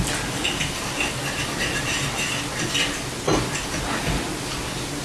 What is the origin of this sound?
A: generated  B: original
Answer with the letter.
B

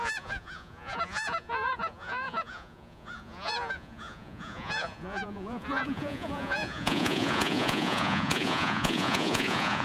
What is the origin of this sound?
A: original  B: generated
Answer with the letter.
B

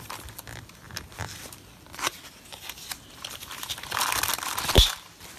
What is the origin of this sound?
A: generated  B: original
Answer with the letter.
B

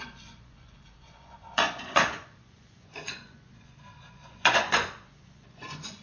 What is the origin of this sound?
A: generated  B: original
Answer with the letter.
A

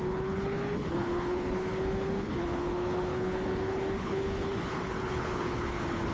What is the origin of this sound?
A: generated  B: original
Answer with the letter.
A